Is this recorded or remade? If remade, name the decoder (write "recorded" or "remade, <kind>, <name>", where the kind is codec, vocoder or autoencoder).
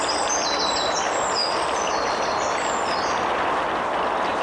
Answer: recorded